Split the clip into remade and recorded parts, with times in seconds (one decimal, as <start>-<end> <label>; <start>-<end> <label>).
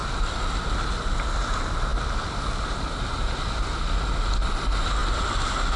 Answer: 0.0-5.8 recorded